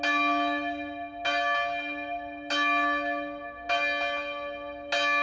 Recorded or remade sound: recorded